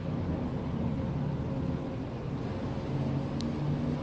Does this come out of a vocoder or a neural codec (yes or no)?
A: no